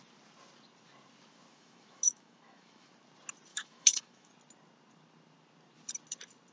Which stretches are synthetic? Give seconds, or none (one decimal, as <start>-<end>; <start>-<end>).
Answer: 1.5-2.9; 3.5-4.3